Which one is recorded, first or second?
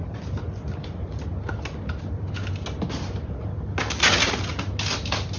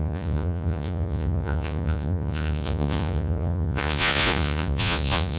first